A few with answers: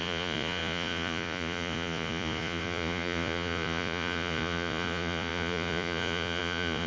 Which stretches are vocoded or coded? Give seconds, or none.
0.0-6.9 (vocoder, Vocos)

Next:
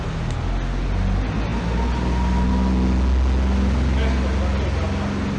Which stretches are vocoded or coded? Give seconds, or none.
none

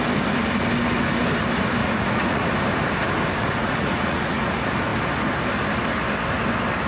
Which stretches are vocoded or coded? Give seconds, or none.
1.8-2.5 (vocoder, Vocos); 3.4-4.5

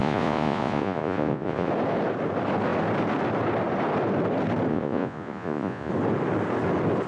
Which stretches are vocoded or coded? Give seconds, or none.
0.0-1.7 (vocoder, Vocos); 4.7-5.9

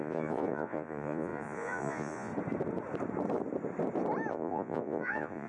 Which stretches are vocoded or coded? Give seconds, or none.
0.0-2.3 (vocoder, Vocos); 4.3-5.5

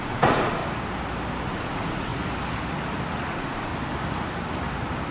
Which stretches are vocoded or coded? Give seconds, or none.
0.0-0.6 (vocoder, Vocos); 1.5-2.1; 3.3-3.7

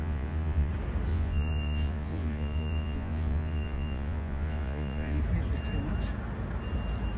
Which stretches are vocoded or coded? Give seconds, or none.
0.0-0.7 (vocoder, Vocos); 1.1-5.2

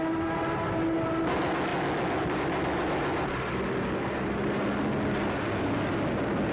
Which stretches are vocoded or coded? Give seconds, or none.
none